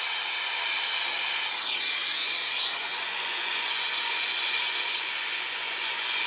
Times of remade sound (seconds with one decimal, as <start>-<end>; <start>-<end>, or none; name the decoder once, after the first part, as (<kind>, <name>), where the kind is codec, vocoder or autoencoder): 2.2-6.3 (vocoder, Vocos)